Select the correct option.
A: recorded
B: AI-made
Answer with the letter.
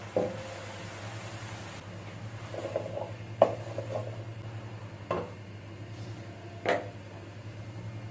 A